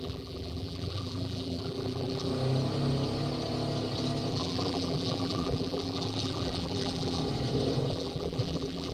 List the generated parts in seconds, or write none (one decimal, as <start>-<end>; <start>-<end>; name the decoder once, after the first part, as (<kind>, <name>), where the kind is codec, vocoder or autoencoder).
0.0-2.3 (vocoder, BigVGAN v2); 4.3-7.2; 7.9-8.9